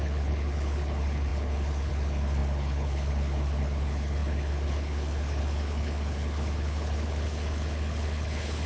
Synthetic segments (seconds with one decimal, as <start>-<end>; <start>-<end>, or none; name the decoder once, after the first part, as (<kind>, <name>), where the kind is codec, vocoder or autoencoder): 0.0-8.7 (codec, HILCodec)